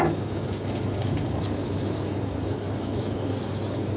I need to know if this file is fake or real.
fake